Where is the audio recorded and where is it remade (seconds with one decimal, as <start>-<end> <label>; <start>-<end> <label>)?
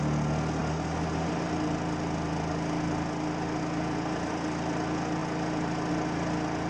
0.0-6.7 recorded